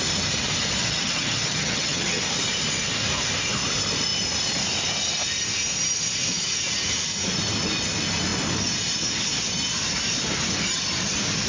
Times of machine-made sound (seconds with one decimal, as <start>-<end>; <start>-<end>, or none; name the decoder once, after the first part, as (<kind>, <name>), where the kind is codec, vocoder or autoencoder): 0.8-2.2 (vocoder, HiFi-GAN)